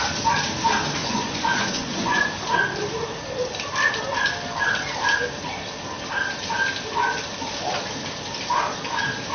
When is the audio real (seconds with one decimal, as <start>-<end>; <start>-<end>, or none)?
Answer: 0.0-1.0; 2.3-9.3